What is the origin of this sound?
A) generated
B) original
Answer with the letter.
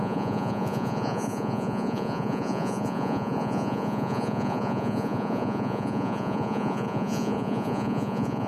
A